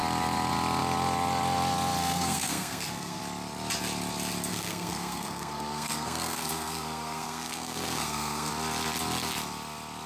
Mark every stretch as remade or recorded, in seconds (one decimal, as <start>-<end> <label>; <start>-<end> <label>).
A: 0.0-2.0 recorded; 2.0-3.2 remade; 3.2-4.5 recorded; 4.5-8.5 remade; 8.5-10.1 recorded